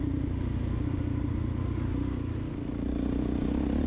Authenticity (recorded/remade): recorded